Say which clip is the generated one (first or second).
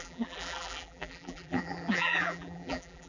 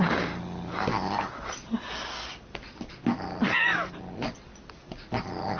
first